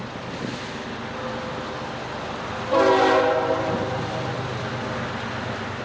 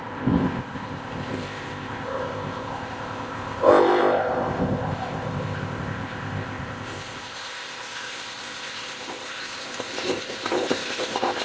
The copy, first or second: second